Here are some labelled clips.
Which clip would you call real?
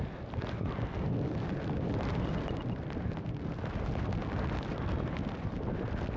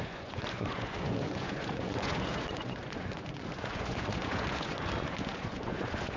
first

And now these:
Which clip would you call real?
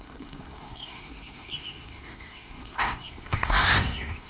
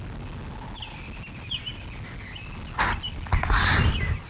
second